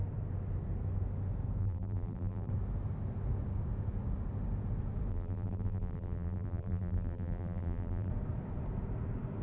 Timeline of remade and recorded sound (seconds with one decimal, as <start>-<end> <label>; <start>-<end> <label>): 0.0-1.6 recorded; 1.6-2.5 remade; 2.5-5.1 recorded; 5.1-8.1 remade; 8.1-9.4 recorded